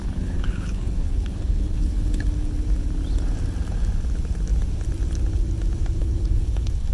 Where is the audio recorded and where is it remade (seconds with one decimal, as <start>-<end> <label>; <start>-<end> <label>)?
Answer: 0.0-2.2 remade; 2.2-6.0 recorded; 6.0-6.9 remade